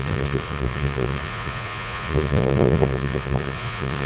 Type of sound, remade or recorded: remade